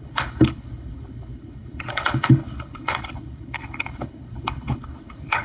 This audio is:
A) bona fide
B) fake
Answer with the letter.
B